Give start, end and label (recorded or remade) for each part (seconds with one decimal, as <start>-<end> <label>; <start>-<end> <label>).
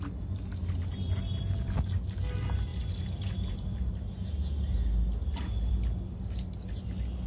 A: 0.0-7.3 recorded